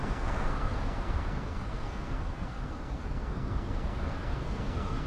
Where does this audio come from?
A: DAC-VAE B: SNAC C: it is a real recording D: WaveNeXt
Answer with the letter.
B